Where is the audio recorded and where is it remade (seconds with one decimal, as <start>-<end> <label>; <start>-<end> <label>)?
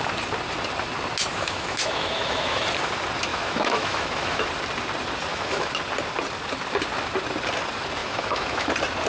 0.0-1.3 recorded; 1.3-2.6 remade; 2.6-3.3 recorded; 3.3-4.5 remade; 4.5-5.3 recorded; 5.3-5.8 remade; 5.8-8.0 recorded; 8.0-8.7 remade; 8.7-9.1 recorded